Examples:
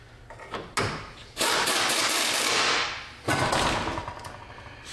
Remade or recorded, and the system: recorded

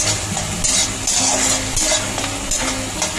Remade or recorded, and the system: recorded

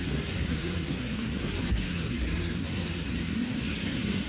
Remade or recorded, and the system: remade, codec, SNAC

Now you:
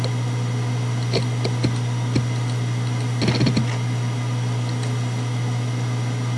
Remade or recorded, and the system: recorded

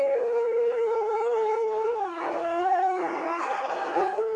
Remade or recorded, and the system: remade, codec, SNAC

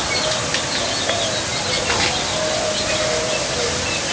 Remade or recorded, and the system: recorded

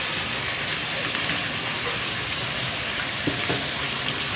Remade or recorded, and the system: recorded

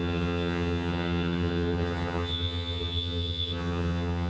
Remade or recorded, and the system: remade, vocoder, HiFi-GAN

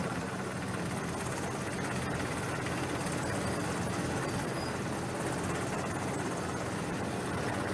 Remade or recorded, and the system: recorded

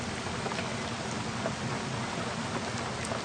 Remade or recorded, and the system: recorded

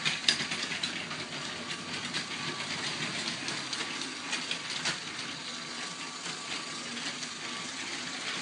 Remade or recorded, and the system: recorded